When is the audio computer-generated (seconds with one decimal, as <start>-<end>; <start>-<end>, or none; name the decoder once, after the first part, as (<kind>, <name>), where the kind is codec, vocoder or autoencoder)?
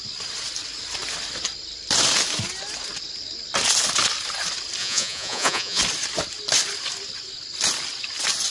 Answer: 4.8-5.8 (vocoder, Vocos)